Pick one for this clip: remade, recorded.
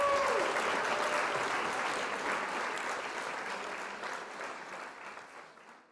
recorded